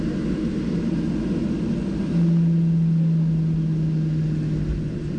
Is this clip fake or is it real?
real